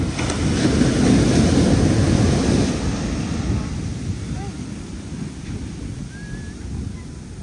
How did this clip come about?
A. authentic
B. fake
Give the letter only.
A